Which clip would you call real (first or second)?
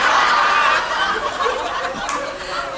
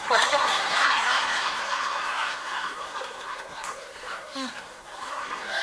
first